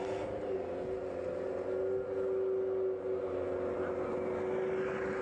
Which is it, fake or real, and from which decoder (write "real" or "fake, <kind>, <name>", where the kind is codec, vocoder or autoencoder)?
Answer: real